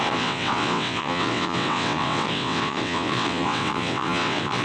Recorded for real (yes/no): no